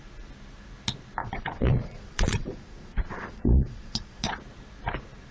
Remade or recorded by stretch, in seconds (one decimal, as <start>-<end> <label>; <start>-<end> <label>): 0.0-1.2 recorded; 1.2-4.4 remade; 4.4-5.3 recorded